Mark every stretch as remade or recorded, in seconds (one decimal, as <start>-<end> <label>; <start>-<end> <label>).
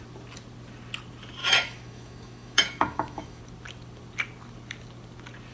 0.0-1.4 recorded; 1.4-3.4 remade; 3.4-5.5 recorded